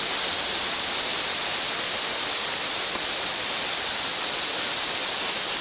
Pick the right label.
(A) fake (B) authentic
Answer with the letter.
B